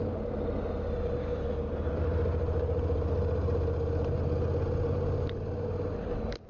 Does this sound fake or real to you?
real